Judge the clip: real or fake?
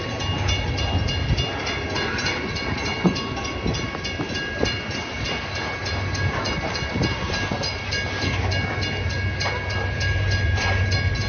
real